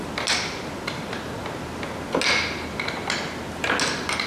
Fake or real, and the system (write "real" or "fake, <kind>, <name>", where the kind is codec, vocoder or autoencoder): real